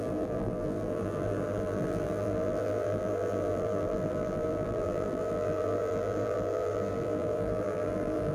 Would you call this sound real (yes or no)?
no